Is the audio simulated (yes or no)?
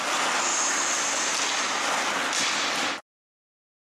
no